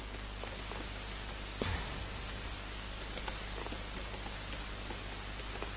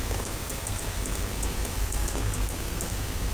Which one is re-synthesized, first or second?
second